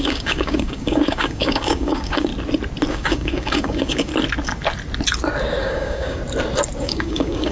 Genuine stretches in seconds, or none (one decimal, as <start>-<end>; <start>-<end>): 2.3-2.9; 4.1-5.6; 6.2-6.8